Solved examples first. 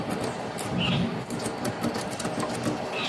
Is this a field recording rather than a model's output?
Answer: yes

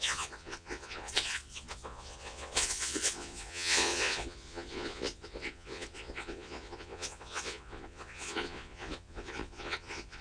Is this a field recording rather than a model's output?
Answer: no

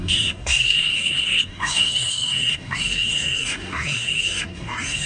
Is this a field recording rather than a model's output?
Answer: no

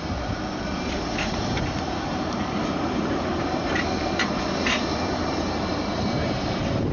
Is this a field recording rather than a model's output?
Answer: no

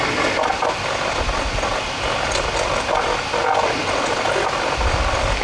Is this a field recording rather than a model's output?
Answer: yes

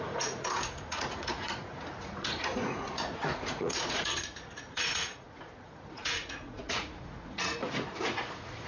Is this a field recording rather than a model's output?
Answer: no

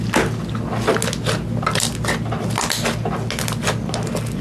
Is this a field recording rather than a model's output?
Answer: yes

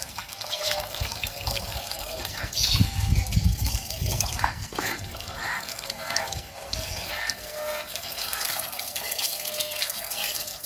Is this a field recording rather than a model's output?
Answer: no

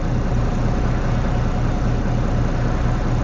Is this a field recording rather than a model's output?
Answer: yes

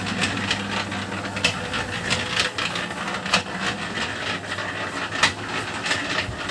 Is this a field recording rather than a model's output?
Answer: yes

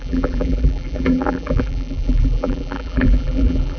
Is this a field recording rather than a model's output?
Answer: no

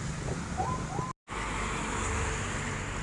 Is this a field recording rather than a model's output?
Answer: yes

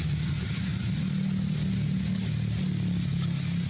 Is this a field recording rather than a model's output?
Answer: yes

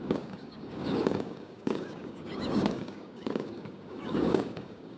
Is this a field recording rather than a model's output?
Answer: no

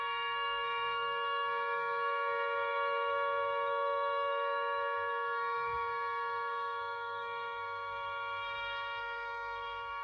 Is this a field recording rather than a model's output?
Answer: no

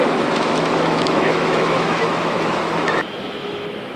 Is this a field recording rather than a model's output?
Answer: no